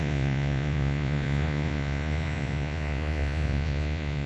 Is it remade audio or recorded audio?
remade